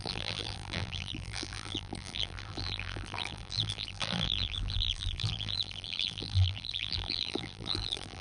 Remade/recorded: remade